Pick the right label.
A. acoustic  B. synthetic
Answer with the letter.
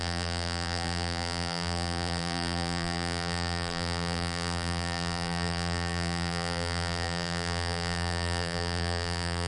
B